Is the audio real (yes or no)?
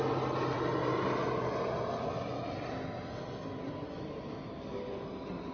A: yes